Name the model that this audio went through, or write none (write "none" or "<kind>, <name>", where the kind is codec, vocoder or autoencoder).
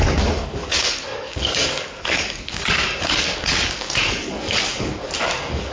codec, DAC